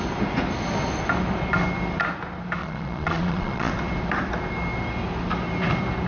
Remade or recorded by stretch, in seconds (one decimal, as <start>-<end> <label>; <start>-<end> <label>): 0.0-2.6 recorded; 2.6-3.7 remade; 3.7-6.1 recorded